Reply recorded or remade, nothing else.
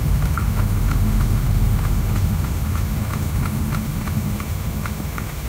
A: remade